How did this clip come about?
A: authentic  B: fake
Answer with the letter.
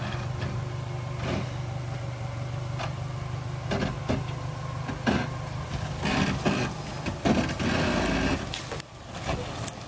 A